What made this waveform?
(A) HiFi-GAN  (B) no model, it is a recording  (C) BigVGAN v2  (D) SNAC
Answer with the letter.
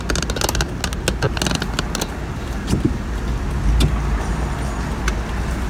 B